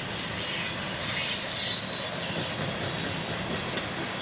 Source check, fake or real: real